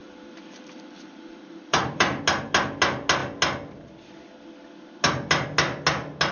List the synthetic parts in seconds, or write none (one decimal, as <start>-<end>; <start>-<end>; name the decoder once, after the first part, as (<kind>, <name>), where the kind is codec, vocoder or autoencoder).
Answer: 0.0-2.2 (vocoder, BigVGAN v2)